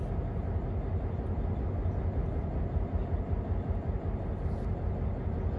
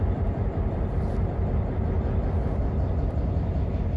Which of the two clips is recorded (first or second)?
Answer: first